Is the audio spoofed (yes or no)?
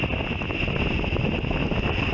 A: no